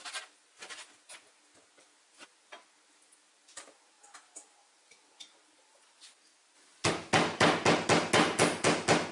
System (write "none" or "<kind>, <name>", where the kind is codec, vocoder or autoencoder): none